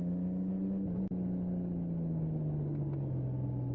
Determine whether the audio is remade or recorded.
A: recorded